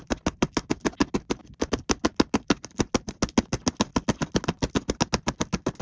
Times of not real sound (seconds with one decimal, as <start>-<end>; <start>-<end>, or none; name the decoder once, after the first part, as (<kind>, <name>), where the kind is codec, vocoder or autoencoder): none

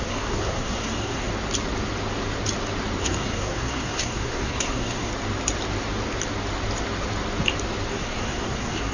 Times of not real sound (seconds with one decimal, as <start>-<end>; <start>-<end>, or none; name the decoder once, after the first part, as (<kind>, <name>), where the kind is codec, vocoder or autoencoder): 0.0-1.3 (codec, SNAC); 3.0-5.1; 7.9-8.9

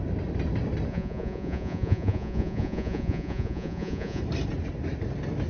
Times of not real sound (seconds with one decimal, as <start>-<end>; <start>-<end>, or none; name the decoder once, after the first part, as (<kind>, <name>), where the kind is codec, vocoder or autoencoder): 0.9-4.2 (vocoder, Vocos)

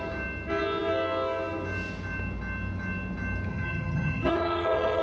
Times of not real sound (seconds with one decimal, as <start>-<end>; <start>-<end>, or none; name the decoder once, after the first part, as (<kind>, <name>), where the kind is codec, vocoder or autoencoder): 3.5-5.0 (vocoder, HiFi-GAN)